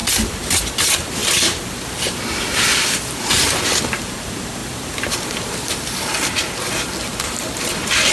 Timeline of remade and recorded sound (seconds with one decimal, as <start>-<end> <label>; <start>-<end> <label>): 0.0-8.1 remade